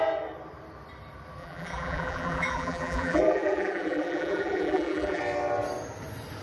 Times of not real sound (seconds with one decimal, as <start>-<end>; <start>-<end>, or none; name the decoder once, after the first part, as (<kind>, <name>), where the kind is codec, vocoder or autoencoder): 1.4-5.2 (vocoder, BigVGAN v2)